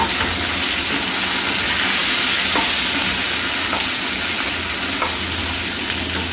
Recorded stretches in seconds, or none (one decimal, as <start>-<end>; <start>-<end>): 0.0-6.3